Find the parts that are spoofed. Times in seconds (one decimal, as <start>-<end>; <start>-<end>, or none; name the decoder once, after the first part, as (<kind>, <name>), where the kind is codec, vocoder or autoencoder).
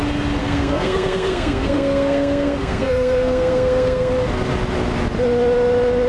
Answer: 0.4-4.1 (codec, SNAC)